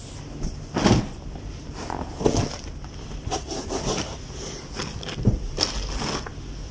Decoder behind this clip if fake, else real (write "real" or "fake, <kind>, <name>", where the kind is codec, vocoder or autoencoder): real